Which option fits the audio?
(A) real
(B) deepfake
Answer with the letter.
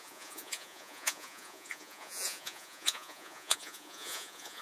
B